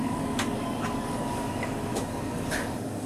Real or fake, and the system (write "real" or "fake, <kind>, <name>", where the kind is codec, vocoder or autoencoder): fake, codec, DAC